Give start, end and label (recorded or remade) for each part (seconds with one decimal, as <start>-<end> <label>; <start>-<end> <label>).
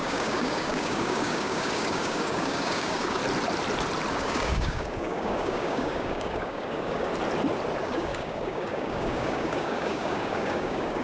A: 0.0-3.2 remade; 3.2-4.1 recorded; 4.1-7.1 remade; 7.1-7.8 recorded; 7.8-11.0 remade